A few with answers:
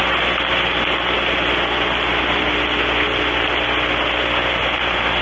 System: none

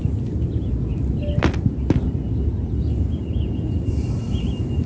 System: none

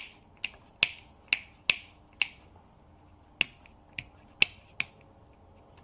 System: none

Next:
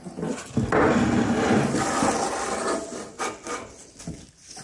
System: none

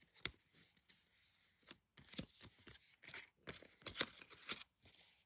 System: none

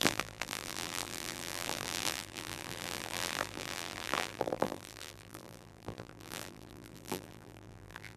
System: vocoder, BigVGAN v2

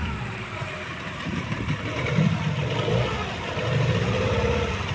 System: vocoder, BigVGAN v2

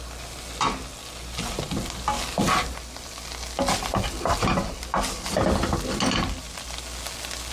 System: none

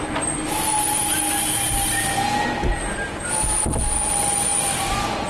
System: none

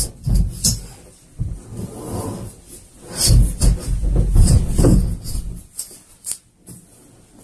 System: none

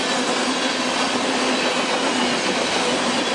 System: none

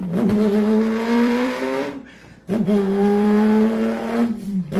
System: vocoder, BigVGAN v2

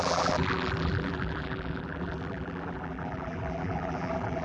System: vocoder, BigVGAN v2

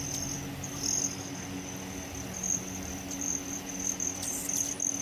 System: none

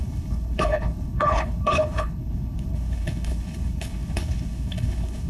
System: codec, HILCodec